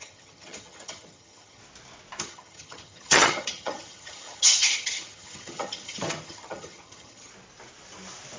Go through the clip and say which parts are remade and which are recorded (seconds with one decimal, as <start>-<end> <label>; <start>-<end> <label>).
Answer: 0.0-1.6 remade; 1.6-2.2 recorded; 2.2-7.3 remade; 7.3-8.4 recorded